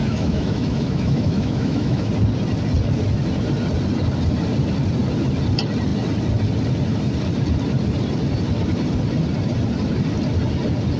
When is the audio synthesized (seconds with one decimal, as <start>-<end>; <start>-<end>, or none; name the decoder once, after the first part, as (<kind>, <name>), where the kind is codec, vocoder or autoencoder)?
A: 0.0-2.1 (autoencoder, DAC-VAE)